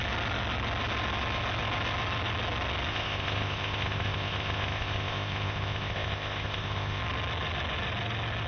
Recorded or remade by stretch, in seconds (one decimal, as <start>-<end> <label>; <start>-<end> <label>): 0.0-2.9 recorded; 2.9-7.0 remade; 7.0-8.5 recorded